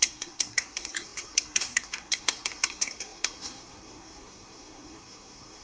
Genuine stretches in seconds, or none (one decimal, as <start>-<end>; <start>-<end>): none